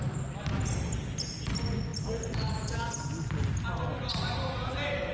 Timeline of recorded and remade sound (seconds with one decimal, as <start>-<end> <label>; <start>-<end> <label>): 0.0-5.1 recorded